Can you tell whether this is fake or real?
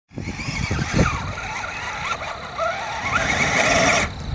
fake